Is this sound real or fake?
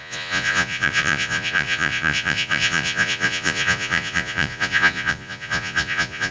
fake